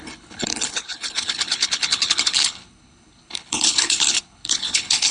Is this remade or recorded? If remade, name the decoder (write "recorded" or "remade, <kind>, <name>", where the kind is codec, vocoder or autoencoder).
remade, codec, HILCodec